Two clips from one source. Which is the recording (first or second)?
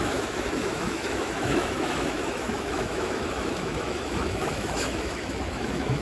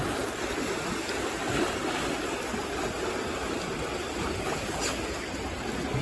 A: second